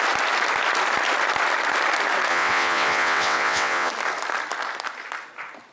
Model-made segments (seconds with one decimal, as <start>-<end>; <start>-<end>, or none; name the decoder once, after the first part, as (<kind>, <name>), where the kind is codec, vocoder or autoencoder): 2.3-3.9 (vocoder, WaveNeXt)